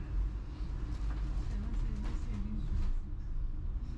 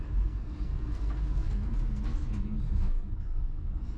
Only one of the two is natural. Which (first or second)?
first